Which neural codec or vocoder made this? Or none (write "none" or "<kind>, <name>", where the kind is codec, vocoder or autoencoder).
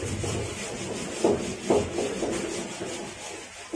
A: none